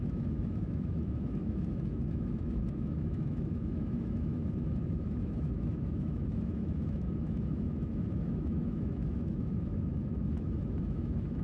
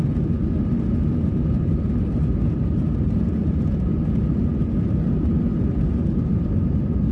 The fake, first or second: first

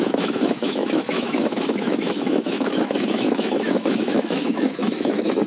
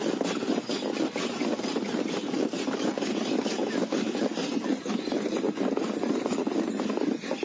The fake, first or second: first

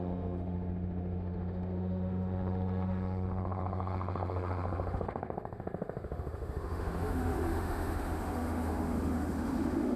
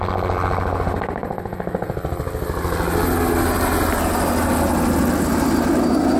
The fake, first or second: first